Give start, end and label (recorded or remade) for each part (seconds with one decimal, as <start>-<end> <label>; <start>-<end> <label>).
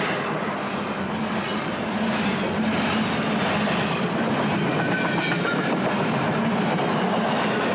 0.0-7.7 recorded